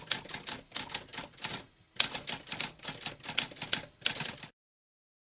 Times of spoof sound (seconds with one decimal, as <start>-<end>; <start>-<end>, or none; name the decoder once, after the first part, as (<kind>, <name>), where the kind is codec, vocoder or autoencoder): none